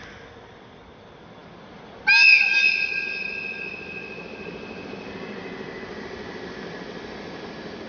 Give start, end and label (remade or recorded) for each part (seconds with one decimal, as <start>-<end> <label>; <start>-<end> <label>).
0.0-7.9 recorded

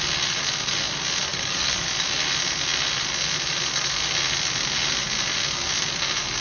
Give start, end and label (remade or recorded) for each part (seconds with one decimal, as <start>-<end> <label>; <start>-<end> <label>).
0.0-1.3 recorded; 1.3-1.9 remade; 1.9-6.4 recorded